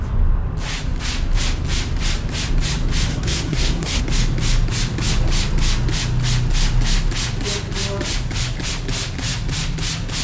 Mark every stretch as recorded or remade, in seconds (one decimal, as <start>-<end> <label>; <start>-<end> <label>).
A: 0.0-3.1 recorded; 3.1-4.0 remade; 4.0-10.2 recorded

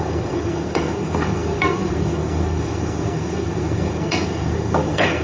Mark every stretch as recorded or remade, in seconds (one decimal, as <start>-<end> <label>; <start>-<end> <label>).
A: 0.0-5.2 remade

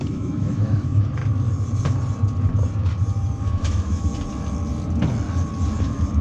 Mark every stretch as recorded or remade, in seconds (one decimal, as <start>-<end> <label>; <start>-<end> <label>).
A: 0.0-1.2 remade; 1.2-3.4 recorded; 3.4-4.1 remade; 4.1-5.8 recorded; 5.8-6.2 remade

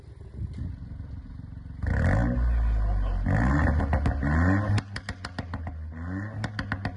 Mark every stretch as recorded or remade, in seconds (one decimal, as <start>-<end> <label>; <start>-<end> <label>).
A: 0.0-7.0 recorded

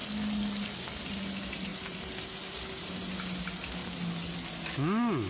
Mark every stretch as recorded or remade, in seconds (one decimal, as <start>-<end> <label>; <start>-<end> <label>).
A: 0.0-5.3 recorded